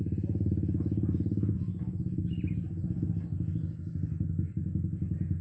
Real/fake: real